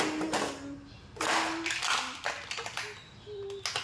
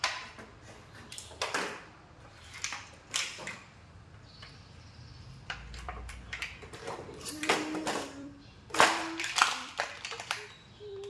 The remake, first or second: second